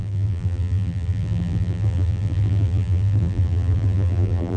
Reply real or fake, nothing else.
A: fake